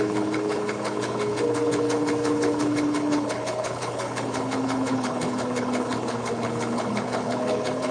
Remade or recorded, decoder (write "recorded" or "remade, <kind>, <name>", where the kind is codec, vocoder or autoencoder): remade, codec, HILCodec